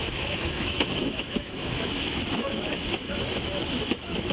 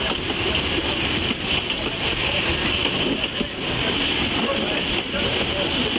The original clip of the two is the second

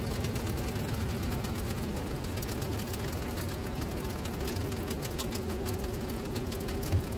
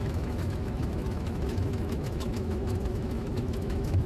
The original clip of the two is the first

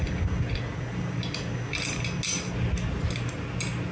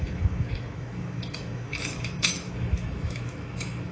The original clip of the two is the first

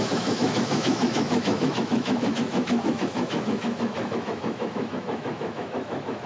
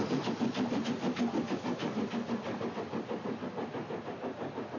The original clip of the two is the second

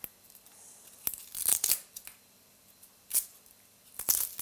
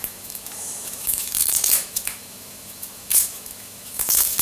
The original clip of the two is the first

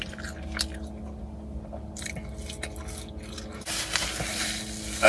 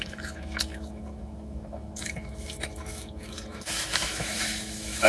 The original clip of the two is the first